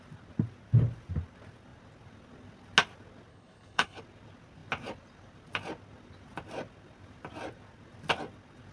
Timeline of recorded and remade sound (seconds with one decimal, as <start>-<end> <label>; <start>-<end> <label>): 0.0-3.3 recorded; 3.3-4.0 remade; 4.0-8.7 recorded